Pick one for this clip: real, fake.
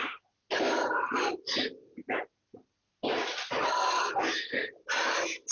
real